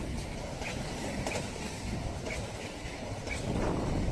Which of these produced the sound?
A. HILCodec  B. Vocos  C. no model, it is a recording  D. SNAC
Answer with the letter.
C